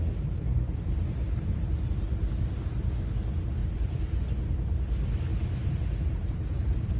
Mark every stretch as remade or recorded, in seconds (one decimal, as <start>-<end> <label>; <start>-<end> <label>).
0.0-3.6 recorded; 3.6-4.2 remade; 4.2-5.3 recorded; 5.3-7.0 remade